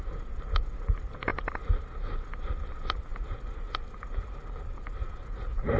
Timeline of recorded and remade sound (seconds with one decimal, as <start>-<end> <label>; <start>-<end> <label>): 0.0-5.8 recorded